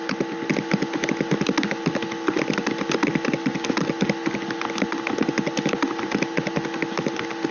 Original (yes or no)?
yes